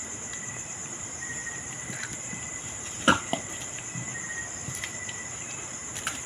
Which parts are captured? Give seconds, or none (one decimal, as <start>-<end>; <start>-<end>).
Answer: 4.1-5.3